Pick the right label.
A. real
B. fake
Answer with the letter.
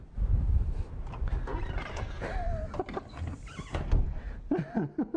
A